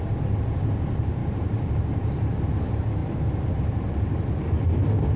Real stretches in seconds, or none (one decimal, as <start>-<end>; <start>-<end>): 0.0-1.2; 2.5-3.0; 4.7-5.2